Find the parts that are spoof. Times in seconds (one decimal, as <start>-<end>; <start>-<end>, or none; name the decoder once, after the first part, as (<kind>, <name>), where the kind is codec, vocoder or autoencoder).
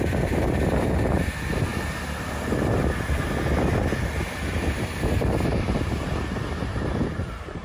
6.7-7.6 (vocoder, BigVGAN v2)